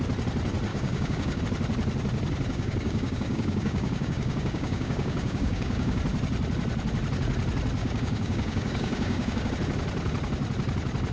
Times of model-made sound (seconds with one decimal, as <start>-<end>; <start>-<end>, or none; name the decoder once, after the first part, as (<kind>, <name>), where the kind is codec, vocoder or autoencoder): 0.7-1.4 (codec, DAC); 2.5-6.0; 7.8-9.5